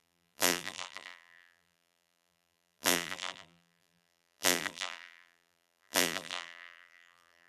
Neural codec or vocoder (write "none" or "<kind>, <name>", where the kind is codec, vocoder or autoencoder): vocoder, BigVGAN v2